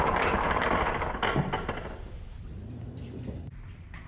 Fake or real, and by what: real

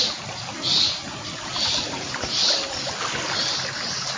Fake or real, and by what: real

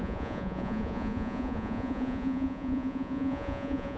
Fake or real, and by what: fake, vocoder, Vocos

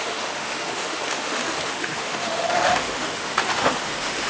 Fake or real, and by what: fake, autoencoder, DAC-VAE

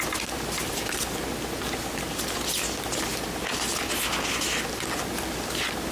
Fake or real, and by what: real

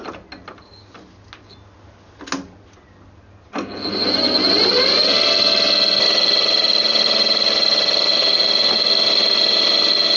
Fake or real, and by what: real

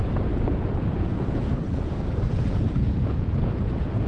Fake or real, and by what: fake, vocoder, Vocos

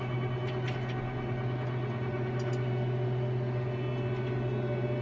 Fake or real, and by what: real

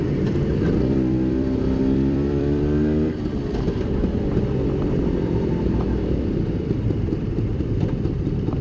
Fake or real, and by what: fake, vocoder, BigVGAN v2